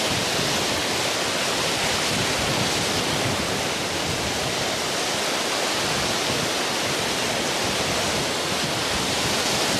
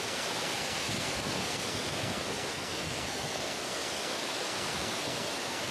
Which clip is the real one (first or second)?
first